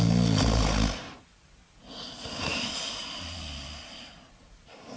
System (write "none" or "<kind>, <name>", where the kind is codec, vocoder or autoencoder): none